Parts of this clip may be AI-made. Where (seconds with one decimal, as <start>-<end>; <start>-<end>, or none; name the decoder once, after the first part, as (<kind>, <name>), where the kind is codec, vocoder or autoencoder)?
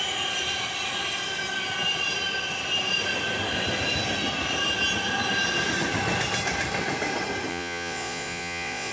7.5-8.9 (vocoder, Vocos)